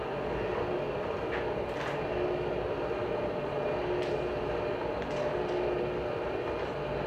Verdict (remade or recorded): recorded